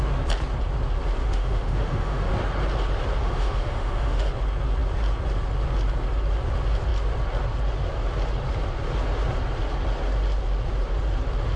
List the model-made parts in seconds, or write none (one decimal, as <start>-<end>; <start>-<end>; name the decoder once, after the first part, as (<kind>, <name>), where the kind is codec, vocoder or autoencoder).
1.2-2.3 (autoencoder, DAC-VAE); 3.2-4.3